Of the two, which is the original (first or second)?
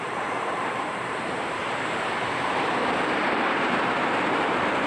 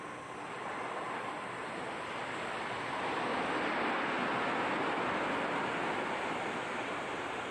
second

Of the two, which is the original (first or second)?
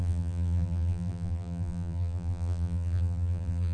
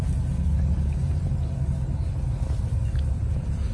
second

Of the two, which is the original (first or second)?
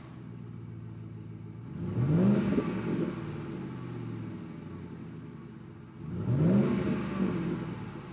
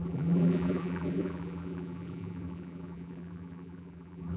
first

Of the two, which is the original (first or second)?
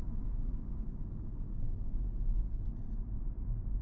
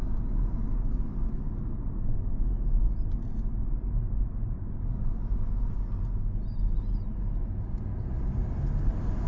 second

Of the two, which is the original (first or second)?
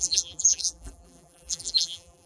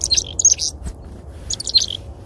second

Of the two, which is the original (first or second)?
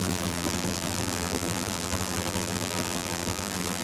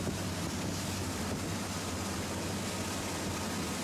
second